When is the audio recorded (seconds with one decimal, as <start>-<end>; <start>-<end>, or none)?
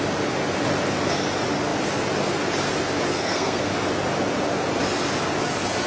0.0-3.1; 3.7-5.9